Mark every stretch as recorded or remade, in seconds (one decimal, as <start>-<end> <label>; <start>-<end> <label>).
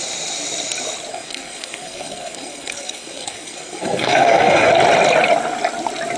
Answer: 0.0-1.1 recorded; 1.1-4.7 remade; 4.7-6.2 recorded